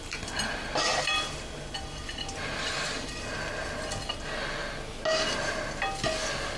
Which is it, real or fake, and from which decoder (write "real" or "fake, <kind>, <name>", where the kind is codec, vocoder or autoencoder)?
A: real